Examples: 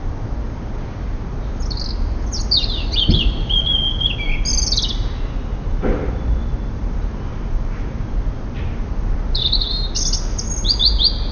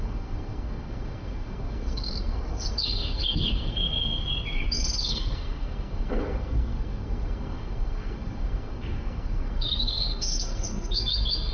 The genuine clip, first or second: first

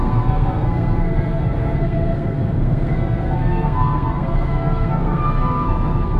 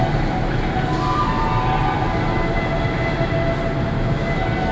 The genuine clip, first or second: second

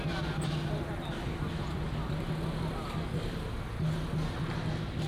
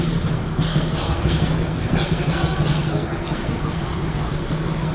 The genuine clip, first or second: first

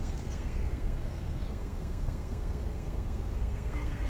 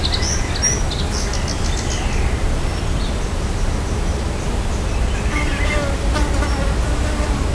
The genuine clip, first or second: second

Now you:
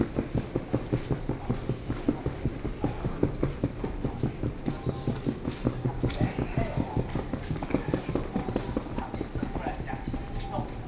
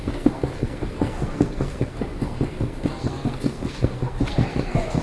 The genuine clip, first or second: first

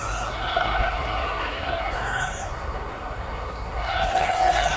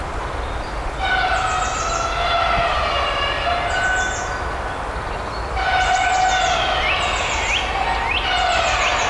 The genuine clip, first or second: second